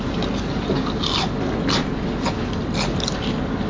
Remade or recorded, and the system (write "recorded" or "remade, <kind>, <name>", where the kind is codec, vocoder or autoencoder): recorded